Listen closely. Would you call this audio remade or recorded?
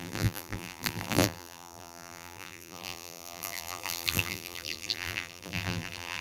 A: remade